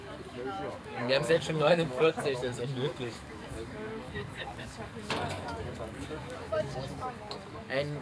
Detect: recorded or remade remade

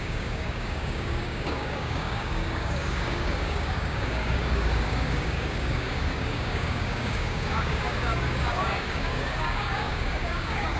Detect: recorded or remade remade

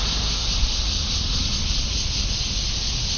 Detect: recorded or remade recorded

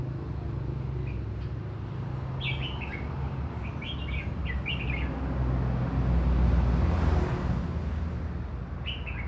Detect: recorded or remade recorded